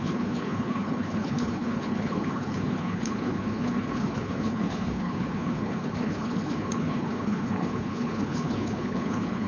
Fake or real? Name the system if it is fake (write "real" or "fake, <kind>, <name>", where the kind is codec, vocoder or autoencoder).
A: fake, codec, HILCodec